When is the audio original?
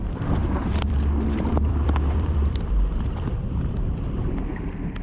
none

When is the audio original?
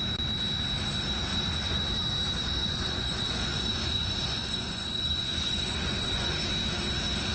0.0-1.3; 1.8-2.6; 6.4-7.3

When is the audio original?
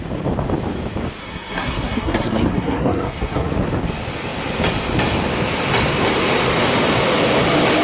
0.0-1.2; 3.5-7.8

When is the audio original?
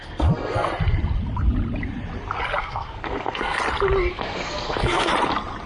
0.7-2.6; 3.6-4.1; 5.1-5.7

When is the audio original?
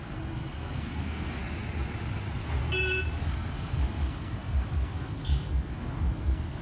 1.4-3.2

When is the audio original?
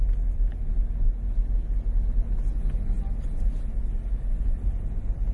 0.0-5.3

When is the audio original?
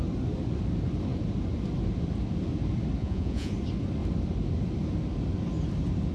0.0-3.0; 3.5-6.1